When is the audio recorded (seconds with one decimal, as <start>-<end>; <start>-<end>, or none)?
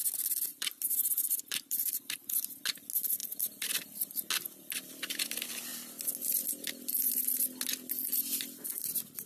0.0-0.5; 2.6-3.2; 3.8-9.3